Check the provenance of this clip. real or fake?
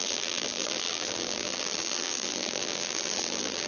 fake